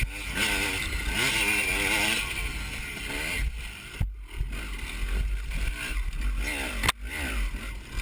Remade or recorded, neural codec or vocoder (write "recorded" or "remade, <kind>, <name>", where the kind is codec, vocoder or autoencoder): recorded